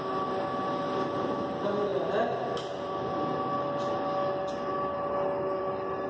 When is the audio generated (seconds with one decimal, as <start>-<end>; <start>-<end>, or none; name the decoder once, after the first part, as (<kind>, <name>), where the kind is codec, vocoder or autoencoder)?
none